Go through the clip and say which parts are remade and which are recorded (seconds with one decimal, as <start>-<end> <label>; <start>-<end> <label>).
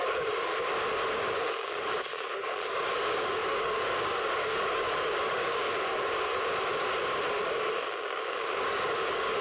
0.0-0.5 remade; 0.5-1.1 recorded; 1.1-6.3 remade; 6.3-7.5 recorded; 7.5-9.4 remade